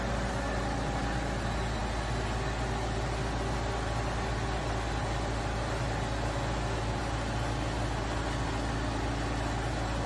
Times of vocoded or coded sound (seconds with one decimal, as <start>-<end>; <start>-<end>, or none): none